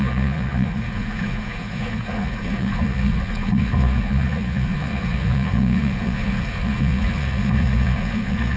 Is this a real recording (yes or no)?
no